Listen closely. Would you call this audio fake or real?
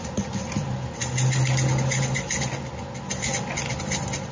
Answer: real